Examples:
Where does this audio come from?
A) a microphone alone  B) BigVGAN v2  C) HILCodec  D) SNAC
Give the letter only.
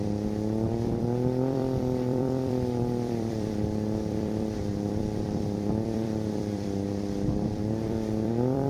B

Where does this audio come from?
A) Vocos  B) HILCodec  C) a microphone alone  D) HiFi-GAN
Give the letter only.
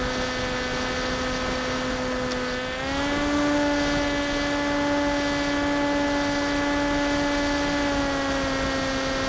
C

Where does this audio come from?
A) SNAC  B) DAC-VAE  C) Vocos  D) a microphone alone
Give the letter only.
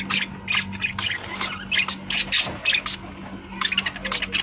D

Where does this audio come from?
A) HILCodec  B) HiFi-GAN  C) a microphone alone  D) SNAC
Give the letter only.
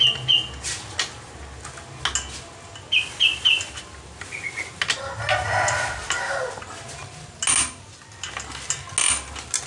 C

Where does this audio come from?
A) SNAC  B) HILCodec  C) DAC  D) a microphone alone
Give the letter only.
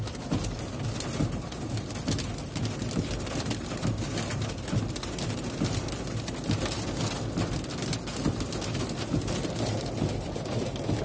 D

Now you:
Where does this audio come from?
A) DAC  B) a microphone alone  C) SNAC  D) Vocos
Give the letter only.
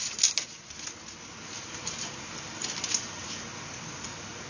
B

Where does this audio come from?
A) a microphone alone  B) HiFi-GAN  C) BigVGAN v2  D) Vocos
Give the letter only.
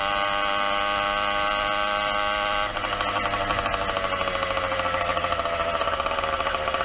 A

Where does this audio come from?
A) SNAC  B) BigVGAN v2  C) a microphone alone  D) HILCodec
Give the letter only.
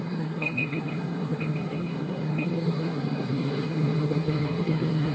A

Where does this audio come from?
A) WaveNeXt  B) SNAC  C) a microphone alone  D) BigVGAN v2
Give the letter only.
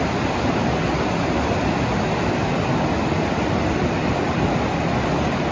C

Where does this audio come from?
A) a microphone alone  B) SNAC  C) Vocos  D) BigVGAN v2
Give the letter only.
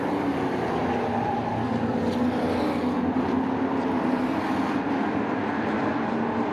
A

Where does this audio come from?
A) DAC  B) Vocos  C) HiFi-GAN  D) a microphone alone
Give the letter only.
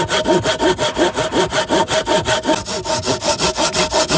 D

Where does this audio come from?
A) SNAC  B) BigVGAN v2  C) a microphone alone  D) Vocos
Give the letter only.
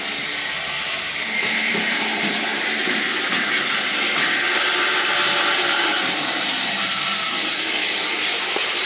B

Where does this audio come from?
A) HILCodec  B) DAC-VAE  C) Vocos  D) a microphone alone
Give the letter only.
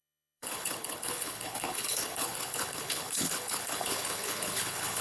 A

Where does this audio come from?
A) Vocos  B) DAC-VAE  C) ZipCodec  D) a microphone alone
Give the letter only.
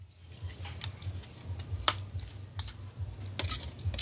D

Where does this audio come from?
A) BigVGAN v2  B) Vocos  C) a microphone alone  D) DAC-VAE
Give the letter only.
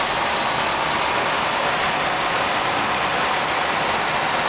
C